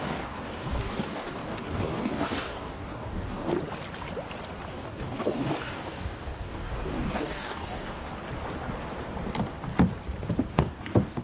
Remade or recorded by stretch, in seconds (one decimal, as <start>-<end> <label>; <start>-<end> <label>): 0.0-3.5 remade; 3.5-4.7 recorded; 4.7-8.2 remade; 8.2-10.5 recorded; 10.5-11.2 remade